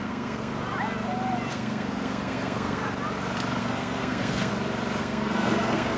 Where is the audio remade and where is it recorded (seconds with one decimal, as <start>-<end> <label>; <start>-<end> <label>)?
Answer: 0.0-0.5 remade; 0.5-1.5 recorded; 1.5-2.8 remade; 2.8-3.6 recorded; 3.6-4.5 remade; 4.5-5.0 recorded; 5.0-6.0 remade